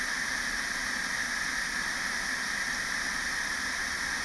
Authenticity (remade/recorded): recorded